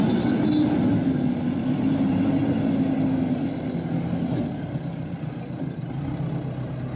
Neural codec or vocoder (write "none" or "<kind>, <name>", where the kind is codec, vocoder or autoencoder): none